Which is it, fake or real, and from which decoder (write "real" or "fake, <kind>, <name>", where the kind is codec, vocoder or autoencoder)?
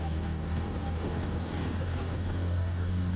fake, codec, DAC